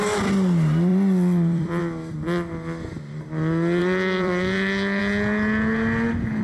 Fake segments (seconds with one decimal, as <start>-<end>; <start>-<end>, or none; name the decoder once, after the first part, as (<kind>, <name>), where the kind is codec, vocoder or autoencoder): 0.9-1.8 (vocoder, BigVGAN v2); 3.8-5.0